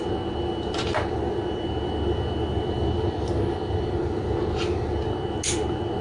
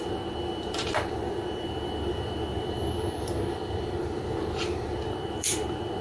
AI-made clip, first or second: second